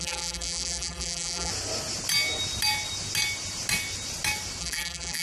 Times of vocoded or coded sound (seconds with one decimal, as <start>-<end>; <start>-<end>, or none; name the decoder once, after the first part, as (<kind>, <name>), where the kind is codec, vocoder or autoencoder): 0.0-1.5 (vocoder, BigVGAN v2); 4.6-5.2